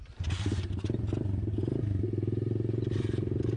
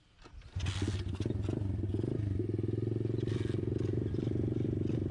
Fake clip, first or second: first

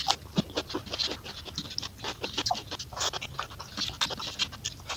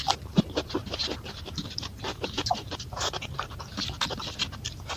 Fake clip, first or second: second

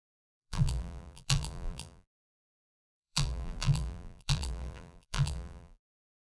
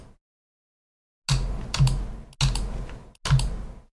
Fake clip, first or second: first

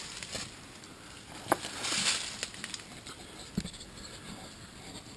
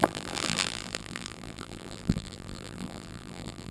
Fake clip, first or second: second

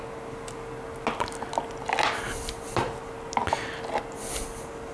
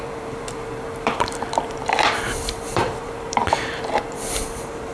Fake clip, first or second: second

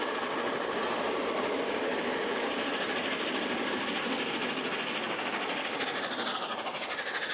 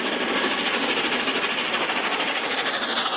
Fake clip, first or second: second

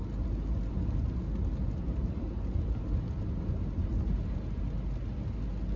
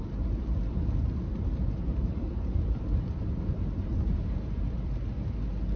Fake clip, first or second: second